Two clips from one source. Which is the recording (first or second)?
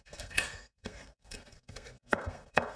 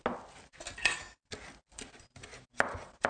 second